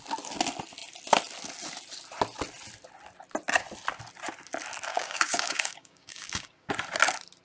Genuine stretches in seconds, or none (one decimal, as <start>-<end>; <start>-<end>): 0.0-4.9; 6.7-7.4